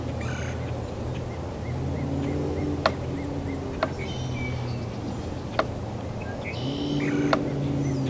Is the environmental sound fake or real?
real